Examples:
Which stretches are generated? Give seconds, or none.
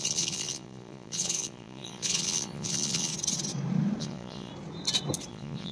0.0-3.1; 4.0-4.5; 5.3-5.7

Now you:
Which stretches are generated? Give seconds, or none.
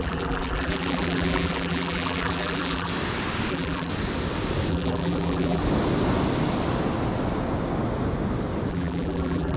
0.0-2.9; 3.5-3.9; 4.7-5.6; 8.7-9.6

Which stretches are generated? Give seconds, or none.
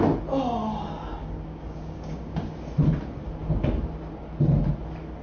1.2-2.5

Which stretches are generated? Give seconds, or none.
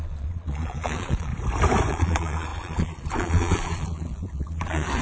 0.0-1.3; 1.9-5.0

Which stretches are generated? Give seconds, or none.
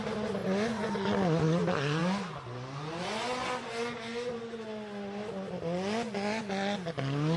0.4-0.9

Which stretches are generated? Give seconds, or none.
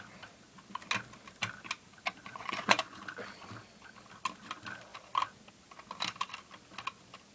2.2-3.0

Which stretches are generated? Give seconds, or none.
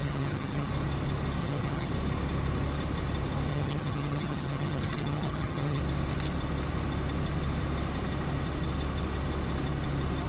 0.0-0.7; 1.4-1.9; 3.5-5.8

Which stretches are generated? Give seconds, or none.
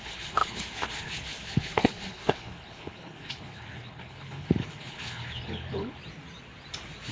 0.0-6.0